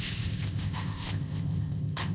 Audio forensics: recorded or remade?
remade